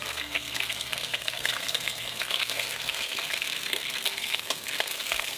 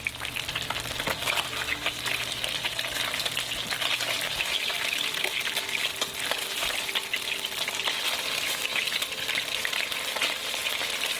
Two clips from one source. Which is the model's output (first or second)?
first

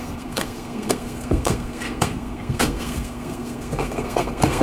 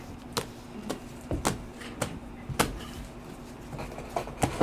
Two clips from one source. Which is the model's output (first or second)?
first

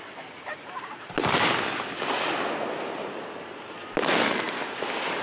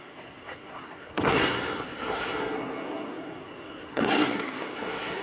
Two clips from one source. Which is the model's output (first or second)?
second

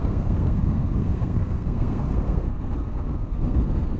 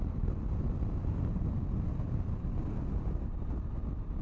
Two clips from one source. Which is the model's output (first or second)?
first